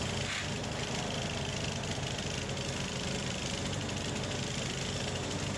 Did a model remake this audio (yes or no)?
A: no